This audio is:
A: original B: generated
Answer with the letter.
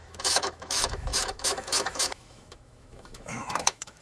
B